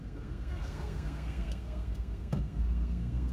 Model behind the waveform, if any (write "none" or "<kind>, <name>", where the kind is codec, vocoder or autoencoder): codec, SNAC